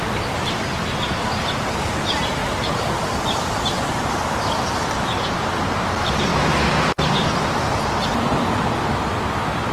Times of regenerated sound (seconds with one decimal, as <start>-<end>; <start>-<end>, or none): 2.4-3.2